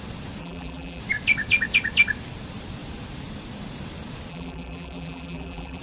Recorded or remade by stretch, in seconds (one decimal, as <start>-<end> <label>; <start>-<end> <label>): 0.0-0.4 recorded; 0.4-1.0 remade; 1.0-4.3 recorded; 4.3-5.8 remade